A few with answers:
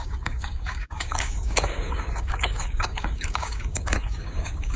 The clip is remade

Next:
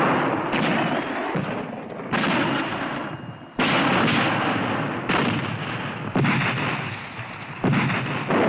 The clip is recorded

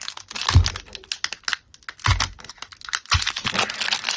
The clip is recorded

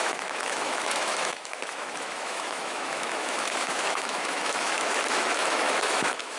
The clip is remade